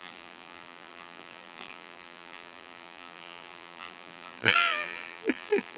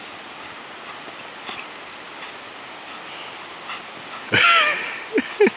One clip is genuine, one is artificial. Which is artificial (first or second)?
first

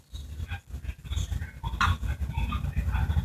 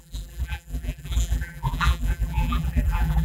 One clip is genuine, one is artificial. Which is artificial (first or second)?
second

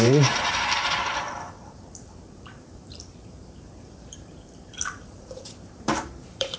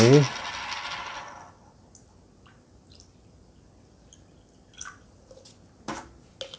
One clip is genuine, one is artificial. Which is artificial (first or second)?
first